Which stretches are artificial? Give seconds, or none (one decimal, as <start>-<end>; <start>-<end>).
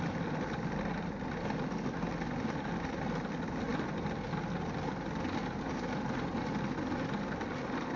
none